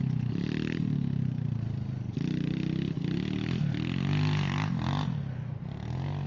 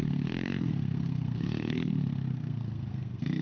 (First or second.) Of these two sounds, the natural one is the first